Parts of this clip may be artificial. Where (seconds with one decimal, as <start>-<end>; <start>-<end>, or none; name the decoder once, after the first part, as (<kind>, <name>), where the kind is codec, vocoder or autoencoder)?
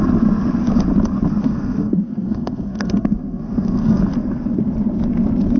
1.4-4.0 (codec, SNAC)